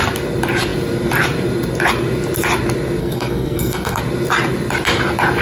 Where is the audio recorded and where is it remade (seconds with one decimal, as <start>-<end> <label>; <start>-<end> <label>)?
0.0-3.0 recorded; 3.0-4.0 remade; 4.0-5.4 recorded